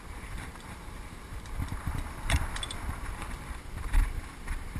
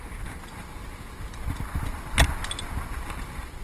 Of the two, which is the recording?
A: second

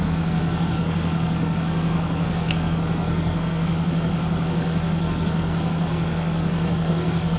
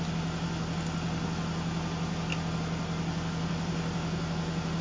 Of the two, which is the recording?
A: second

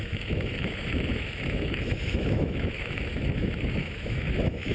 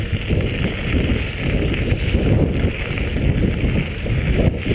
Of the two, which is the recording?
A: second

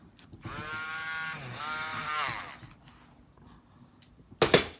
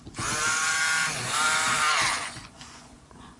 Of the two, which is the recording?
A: first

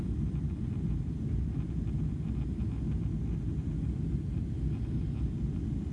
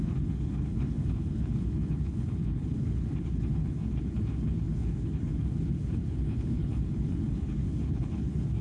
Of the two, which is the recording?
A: first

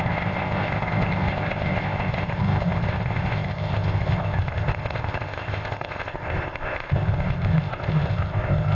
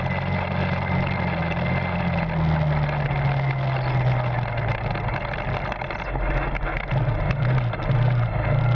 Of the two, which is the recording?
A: second